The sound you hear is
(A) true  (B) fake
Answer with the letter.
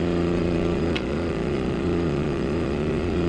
B